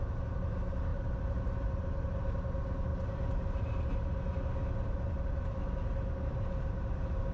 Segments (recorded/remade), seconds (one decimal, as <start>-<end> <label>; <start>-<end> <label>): 0.0-0.9 recorded; 0.9-1.8 remade; 1.8-7.3 recorded